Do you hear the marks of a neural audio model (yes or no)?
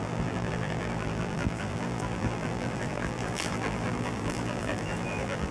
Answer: yes